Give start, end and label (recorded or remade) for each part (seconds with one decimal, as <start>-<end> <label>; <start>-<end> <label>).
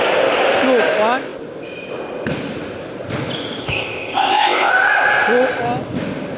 0.0-3.6 recorded; 3.6-4.7 remade; 4.7-6.4 recorded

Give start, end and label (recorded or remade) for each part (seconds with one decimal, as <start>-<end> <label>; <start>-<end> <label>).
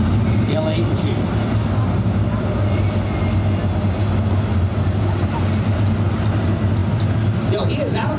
0.0-8.2 recorded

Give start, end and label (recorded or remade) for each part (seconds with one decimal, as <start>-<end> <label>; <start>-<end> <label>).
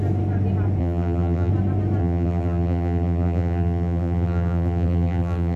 0.0-0.8 recorded; 0.8-1.5 remade; 1.5-2.0 recorded; 2.0-5.6 remade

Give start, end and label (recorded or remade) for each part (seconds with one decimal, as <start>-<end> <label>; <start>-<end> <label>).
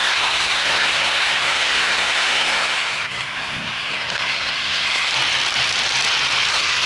0.0-5.1 remade; 5.1-6.5 recorded; 6.5-6.9 remade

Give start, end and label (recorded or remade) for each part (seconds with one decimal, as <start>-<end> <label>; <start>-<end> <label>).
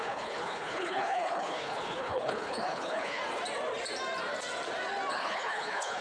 0.0-3.2 remade; 3.2-5.1 recorded; 5.1-6.0 remade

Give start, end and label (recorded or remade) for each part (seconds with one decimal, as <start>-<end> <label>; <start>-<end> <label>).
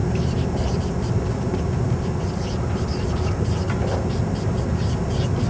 0.0-5.5 recorded